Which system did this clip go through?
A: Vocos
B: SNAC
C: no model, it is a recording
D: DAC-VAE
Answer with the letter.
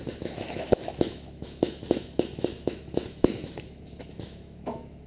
D